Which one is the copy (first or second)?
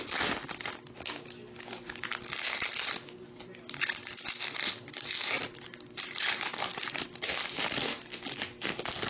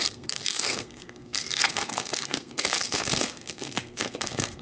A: second